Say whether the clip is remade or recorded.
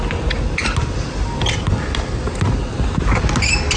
recorded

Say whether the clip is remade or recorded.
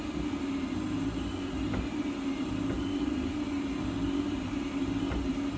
recorded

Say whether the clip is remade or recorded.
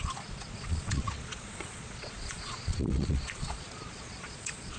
remade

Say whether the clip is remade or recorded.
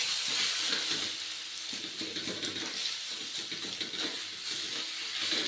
recorded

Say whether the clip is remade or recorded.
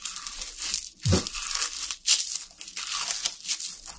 recorded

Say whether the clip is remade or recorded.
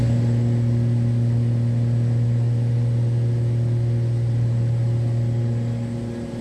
recorded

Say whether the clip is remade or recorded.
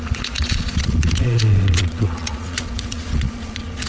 remade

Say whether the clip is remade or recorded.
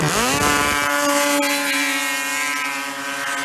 recorded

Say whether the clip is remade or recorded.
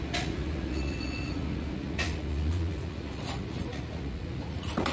remade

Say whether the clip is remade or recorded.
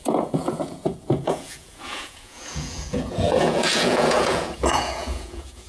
remade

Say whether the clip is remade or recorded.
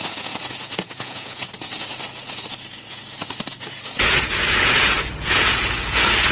remade